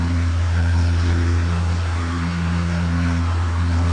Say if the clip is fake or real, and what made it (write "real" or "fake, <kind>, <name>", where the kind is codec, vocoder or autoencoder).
fake, codec, SNAC